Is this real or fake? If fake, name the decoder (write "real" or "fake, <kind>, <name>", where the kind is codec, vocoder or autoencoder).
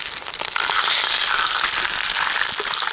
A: real